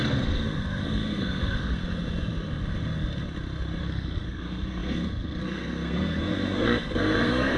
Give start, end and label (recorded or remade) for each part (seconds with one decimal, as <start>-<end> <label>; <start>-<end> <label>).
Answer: 0.0-1.8 remade; 1.8-3.8 recorded; 3.8-7.6 remade